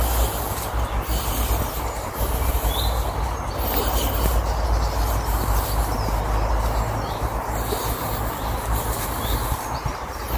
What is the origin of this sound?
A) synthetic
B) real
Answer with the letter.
B